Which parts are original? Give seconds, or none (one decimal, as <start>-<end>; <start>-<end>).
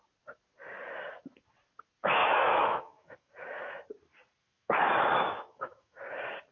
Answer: 0.0-2.2; 3.3-4.4; 6.0-6.5